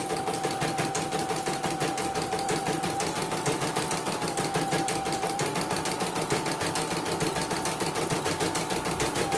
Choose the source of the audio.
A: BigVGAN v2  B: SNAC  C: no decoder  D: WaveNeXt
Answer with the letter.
C